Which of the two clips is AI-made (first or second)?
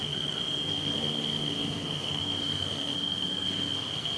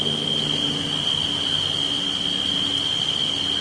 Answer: first